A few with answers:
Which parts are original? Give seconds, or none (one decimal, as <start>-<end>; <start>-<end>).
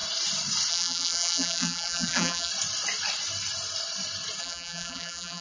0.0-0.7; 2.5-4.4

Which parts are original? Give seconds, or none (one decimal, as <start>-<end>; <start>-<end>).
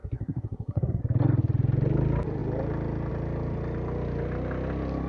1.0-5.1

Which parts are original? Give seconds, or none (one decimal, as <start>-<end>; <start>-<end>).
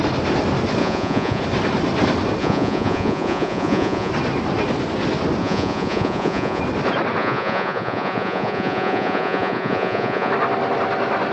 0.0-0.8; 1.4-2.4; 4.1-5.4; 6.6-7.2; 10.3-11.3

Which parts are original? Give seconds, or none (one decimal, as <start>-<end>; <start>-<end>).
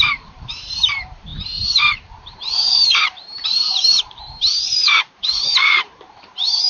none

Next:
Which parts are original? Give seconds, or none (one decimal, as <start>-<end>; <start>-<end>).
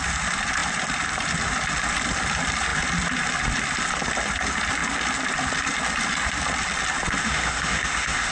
0.0-7.2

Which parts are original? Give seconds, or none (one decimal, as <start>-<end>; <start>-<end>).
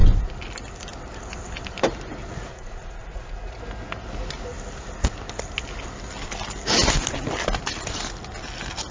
0.0-2.5; 3.6-8.9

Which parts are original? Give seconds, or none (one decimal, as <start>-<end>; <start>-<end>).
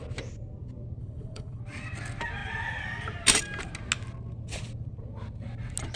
0.0-1.0; 1.6-6.0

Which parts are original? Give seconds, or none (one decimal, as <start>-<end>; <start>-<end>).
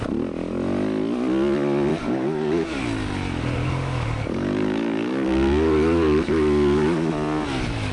0.0-1.9; 2.8-3.6; 7.1-7.9